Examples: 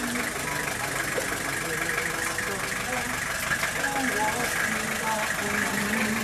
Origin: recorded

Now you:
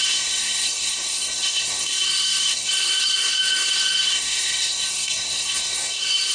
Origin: remade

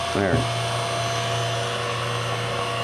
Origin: recorded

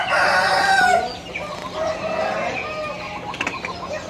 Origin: recorded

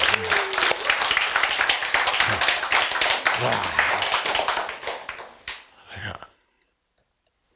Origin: recorded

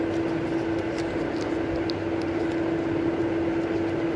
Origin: recorded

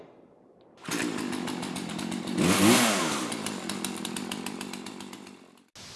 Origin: recorded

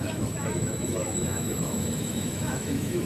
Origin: remade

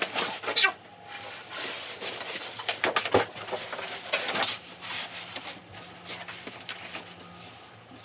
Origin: recorded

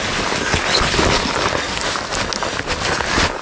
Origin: recorded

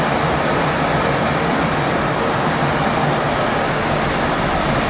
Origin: recorded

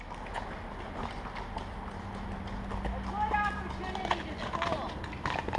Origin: recorded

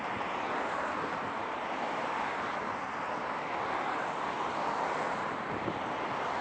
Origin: recorded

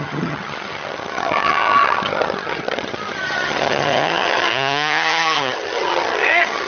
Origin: remade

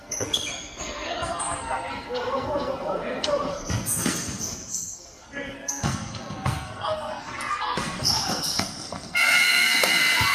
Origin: remade